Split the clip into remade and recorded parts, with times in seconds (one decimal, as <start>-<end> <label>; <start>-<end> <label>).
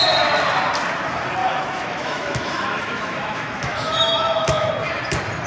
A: 0.0-1.4 recorded; 1.4-4.7 remade; 4.7-5.5 recorded